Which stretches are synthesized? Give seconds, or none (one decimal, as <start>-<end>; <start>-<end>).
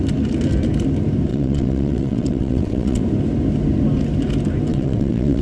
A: 1.3-3.0; 4.7-5.4